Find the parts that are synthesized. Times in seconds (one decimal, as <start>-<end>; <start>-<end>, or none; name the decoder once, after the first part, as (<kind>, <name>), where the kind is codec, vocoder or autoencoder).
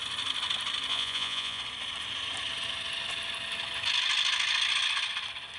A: 0.9-1.6 (vocoder, Vocos)